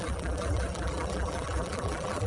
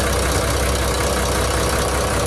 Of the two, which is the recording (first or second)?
second